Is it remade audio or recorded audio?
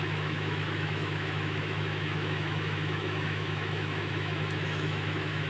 remade